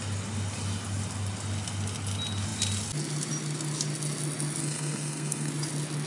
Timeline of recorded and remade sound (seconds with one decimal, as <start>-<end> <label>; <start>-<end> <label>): 0.0-4.6 recorded; 4.6-5.5 remade; 5.5-6.1 recorded